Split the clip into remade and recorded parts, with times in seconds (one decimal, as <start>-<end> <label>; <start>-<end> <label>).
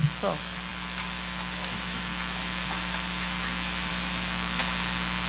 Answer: 0.0-4.6 remade; 4.6-5.3 recorded